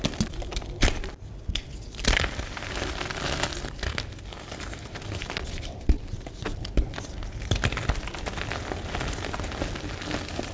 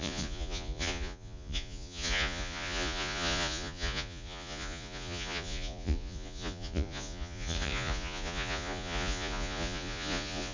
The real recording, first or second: first